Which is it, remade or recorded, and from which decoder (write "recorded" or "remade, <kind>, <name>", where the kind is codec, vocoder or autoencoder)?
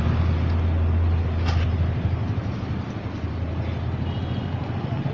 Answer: recorded